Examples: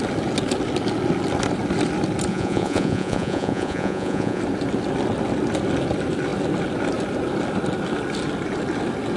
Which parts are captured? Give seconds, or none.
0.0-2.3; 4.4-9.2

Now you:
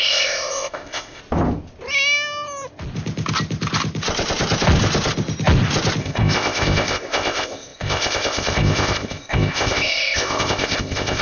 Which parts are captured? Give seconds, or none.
1.2-6.0